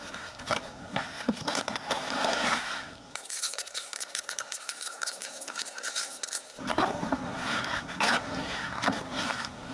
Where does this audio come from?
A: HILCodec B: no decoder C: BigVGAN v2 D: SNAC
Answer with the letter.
D